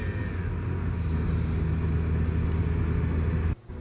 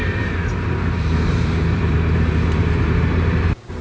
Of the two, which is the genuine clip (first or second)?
first